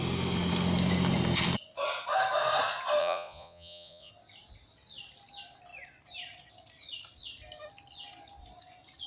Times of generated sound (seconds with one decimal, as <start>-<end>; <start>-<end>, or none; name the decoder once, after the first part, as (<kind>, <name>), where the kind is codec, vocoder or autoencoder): 3.0-4.1 (vocoder, Vocos)